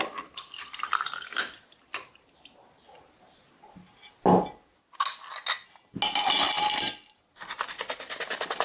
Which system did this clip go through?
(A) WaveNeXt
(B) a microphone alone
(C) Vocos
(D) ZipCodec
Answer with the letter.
B